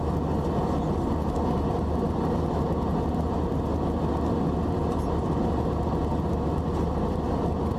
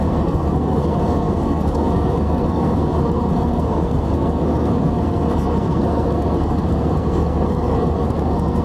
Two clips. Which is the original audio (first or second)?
first